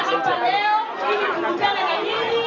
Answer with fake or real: real